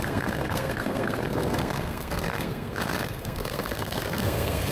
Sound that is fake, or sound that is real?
fake